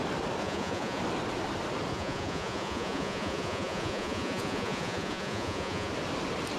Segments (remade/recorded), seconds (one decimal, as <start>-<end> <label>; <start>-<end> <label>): 0.0-0.4 recorded; 0.4-1.0 remade; 1.0-1.9 recorded; 1.9-5.9 remade; 5.9-6.6 recorded